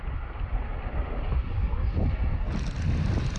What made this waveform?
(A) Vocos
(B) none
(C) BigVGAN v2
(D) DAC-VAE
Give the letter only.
B